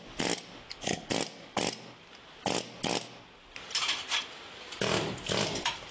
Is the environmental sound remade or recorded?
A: recorded